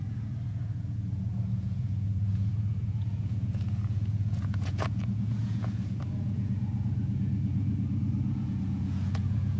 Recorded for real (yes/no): no